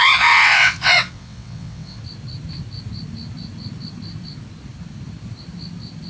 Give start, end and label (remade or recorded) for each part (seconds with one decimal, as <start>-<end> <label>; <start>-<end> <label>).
0.0-2.0 remade; 2.0-6.1 recorded